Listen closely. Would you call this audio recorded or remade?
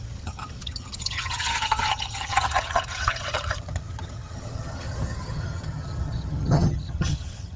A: remade